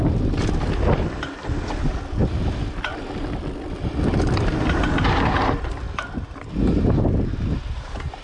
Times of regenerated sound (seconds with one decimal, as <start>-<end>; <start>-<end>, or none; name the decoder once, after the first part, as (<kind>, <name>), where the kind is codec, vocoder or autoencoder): none